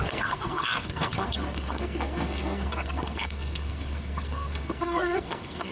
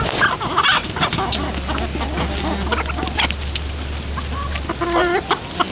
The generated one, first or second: first